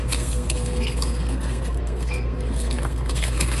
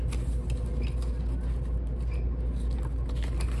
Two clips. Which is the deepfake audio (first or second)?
first